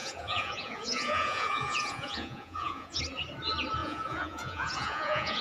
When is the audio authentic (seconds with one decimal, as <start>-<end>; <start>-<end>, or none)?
3.0-3.8